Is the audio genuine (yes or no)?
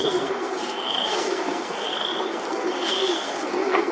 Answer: no